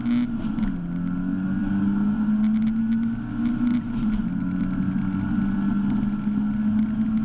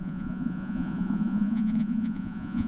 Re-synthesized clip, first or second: second